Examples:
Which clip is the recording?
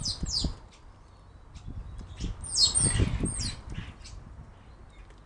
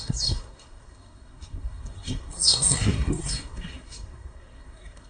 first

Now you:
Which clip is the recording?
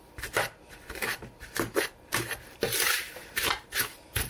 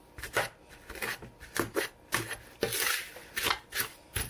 second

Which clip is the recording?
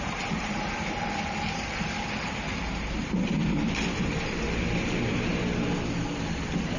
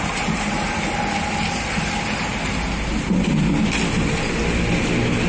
second